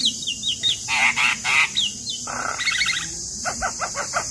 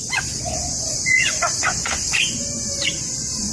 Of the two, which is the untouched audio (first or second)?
first